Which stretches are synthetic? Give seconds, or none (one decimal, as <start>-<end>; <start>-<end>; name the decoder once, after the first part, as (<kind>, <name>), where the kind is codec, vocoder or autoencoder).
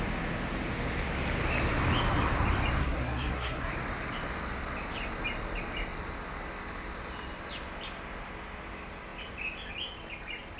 2.8-3.7 (codec, SNAC)